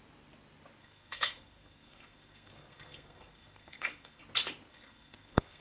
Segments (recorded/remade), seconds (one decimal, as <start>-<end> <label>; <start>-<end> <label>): 0.0-0.8 recorded; 0.8-4.2 remade; 4.2-4.7 recorded; 4.7-5.6 remade